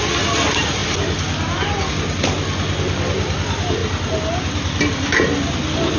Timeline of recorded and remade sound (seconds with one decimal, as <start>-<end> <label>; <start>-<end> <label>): 0.0-6.0 recorded